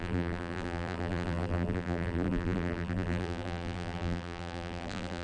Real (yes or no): no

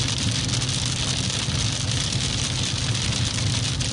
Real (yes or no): no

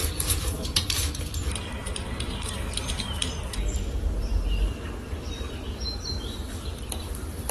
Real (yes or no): no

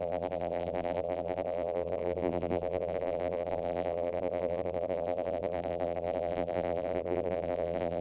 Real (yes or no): no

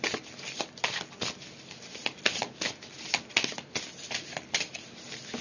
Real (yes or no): yes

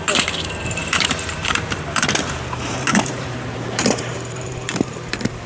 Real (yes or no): no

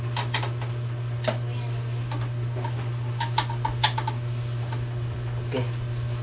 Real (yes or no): yes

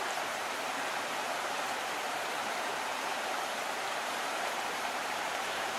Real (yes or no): no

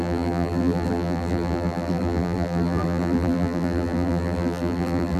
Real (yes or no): no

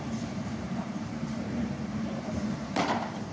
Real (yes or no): no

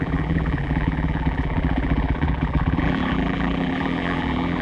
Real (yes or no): no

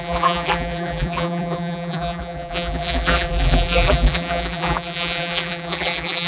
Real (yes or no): no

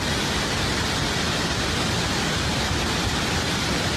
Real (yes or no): yes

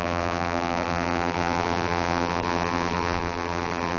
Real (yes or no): no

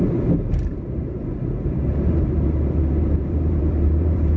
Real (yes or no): no